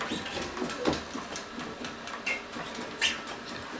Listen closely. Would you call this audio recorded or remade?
recorded